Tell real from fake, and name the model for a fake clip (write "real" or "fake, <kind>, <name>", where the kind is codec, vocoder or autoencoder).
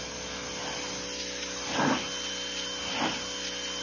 real